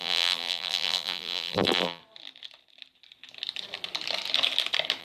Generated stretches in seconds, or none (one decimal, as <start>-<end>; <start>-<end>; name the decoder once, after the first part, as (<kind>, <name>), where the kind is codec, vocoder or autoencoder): 0.0-2.0 (vocoder, BigVGAN v2)